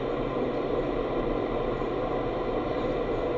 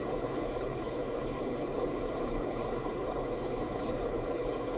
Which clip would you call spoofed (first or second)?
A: second